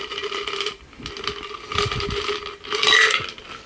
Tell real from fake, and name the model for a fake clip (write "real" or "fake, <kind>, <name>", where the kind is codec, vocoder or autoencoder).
real